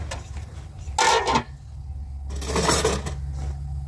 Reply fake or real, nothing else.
real